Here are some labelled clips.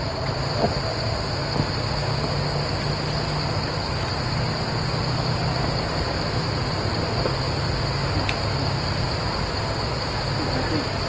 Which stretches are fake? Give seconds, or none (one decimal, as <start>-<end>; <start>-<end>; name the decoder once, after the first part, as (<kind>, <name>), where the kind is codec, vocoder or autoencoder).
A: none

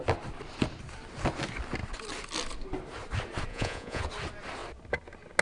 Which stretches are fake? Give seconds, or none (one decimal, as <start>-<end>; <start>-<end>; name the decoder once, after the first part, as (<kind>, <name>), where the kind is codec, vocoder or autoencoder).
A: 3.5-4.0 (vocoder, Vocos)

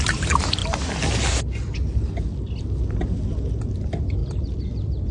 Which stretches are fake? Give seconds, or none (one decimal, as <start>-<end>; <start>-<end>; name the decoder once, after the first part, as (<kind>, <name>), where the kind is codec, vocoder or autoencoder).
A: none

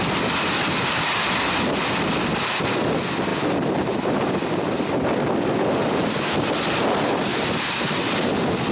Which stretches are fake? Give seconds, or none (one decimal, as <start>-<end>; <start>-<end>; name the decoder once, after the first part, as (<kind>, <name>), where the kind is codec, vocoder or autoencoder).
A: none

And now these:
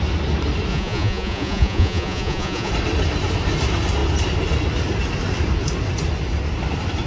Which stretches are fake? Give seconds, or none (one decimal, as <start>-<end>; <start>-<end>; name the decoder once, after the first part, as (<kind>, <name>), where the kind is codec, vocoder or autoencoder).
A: 0.7-2.7 (vocoder, Vocos)

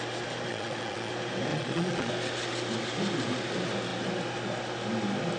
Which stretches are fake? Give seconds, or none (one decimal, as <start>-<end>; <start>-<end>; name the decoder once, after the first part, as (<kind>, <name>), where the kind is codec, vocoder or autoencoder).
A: 0.5-1.1 (vocoder, Vocos); 1.5-2.1

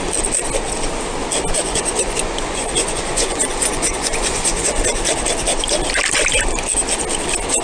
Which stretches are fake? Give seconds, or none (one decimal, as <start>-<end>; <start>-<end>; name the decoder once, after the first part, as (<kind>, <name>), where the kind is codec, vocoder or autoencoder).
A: 1.6-4.8 (vocoder, Vocos)